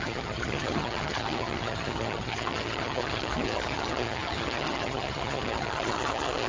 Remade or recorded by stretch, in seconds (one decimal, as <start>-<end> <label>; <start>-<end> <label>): 0.0-6.5 remade